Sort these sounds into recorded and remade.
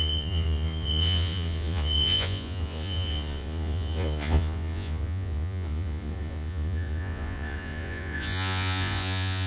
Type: remade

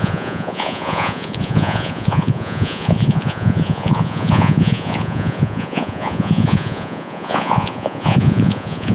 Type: remade